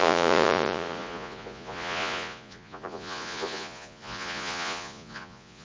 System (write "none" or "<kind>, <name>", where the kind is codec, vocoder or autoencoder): vocoder, Vocos